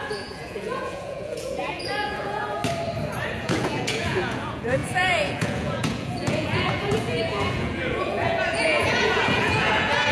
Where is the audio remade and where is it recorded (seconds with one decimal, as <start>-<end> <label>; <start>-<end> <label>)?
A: 0.0-2.6 remade; 2.6-3.4 recorded; 3.4-10.1 remade